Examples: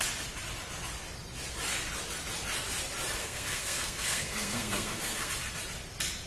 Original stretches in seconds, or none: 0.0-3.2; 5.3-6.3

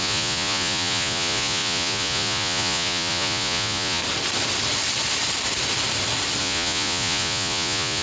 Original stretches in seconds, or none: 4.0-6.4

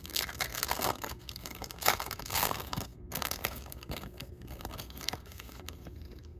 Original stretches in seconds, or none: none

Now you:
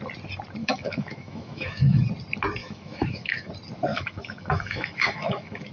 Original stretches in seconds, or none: 0.0-0.6; 2.0-2.6; 3.5-3.9

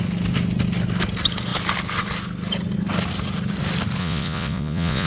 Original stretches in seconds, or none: 0.0-4.0

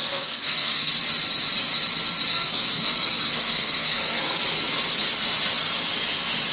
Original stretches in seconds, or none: 0.9-2.3; 4.4-6.5